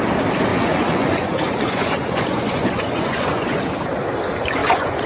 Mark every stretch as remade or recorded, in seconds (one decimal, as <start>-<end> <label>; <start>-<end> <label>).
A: 0.0-0.5 recorded; 0.5-3.6 remade; 3.6-4.6 recorded; 4.6-5.1 remade